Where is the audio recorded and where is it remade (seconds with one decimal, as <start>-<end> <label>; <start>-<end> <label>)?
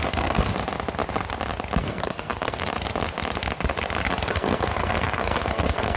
0.0-0.5 remade; 0.5-1.8 recorded; 1.8-2.6 remade; 2.6-4.3 recorded; 4.3-6.0 remade